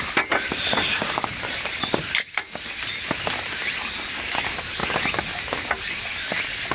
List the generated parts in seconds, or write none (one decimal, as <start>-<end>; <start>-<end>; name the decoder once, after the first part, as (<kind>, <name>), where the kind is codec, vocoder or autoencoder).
none